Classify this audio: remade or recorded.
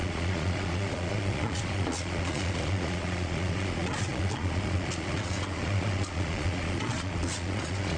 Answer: remade